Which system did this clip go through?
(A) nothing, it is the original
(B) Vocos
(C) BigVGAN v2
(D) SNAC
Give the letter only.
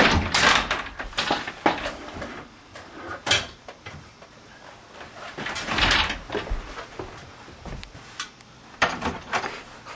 C